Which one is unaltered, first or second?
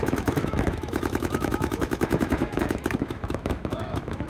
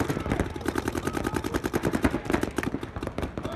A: second